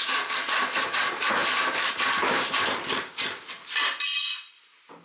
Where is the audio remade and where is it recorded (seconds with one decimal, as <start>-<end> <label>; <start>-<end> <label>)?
0.0-5.0 recorded